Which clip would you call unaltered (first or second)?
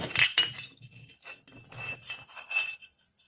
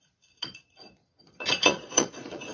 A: first